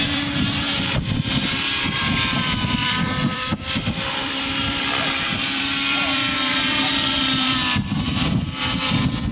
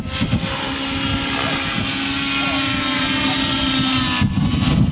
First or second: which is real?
second